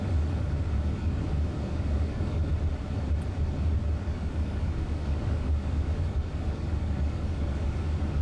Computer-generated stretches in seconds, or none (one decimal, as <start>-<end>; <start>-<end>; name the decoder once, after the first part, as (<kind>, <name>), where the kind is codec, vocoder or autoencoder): 0.0-2.5 (codec, DAC); 4.0-8.2